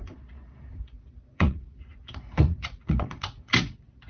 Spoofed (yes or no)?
yes